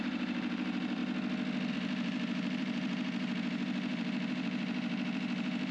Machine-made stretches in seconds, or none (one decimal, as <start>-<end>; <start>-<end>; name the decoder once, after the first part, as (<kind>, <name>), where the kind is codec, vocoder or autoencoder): 0.0-1.0 (vocoder, BigVGAN v2); 1.7-5.7

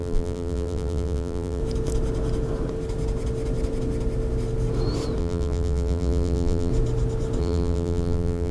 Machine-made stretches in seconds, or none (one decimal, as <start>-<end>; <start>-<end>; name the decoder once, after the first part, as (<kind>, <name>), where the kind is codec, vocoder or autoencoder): 0.0-1.6 (vocoder, BigVGAN v2); 5.2-6.7; 7.4-8.5

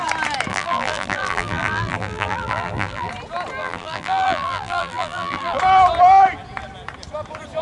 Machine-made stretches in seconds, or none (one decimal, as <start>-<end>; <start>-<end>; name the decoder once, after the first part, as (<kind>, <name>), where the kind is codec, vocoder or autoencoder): 0.5-3.1 (vocoder, BigVGAN v2); 3.6-5.6

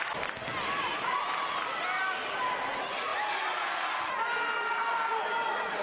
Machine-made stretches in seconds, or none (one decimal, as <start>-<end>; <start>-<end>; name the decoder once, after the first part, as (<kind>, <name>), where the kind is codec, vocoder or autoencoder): 0.4-1.6 (vocoder, BigVGAN v2)

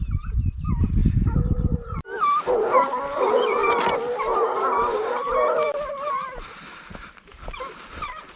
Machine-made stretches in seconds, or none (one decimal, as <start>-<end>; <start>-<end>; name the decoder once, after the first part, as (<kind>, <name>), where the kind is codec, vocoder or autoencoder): 0.0-1.0 (vocoder, BigVGAN v2); 2.0-8.4

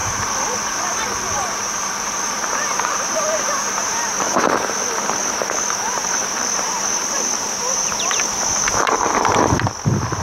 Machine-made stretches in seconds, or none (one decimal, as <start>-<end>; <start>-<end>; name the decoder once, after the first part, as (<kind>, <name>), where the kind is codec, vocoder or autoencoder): 0.0-4.5 (vocoder, BigVGAN v2); 5.2-9.3